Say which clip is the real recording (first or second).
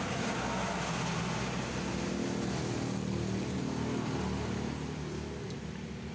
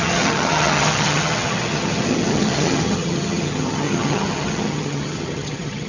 first